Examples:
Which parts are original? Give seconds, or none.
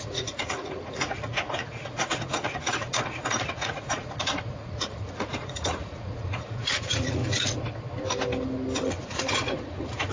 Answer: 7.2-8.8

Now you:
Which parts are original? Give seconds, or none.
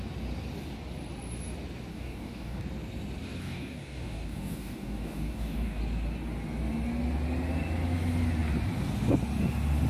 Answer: 0.0-1.9; 2.6-3.4; 5.8-9.9